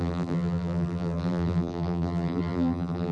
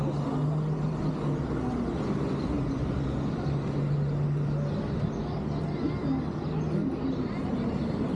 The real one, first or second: second